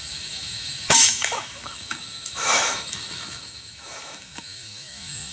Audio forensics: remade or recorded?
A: remade